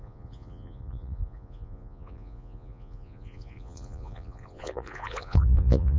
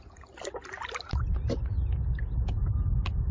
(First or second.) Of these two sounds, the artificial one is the first